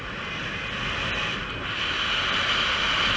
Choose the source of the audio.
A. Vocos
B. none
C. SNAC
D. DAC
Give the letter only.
B